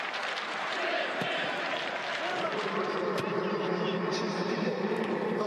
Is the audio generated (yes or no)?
yes